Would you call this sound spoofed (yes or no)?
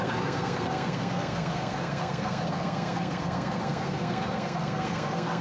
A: yes